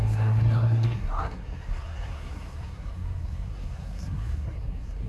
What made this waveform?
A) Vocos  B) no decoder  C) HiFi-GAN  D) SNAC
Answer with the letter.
D